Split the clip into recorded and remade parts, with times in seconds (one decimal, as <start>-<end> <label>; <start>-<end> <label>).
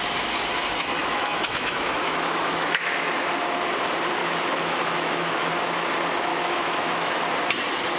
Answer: 0.0-1.0 recorded; 1.0-3.2 remade; 3.2-4.2 recorded; 4.2-5.5 remade; 5.5-6.3 recorded; 6.3-7.2 remade; 7.2-8.0 recorded